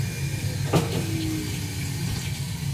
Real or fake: real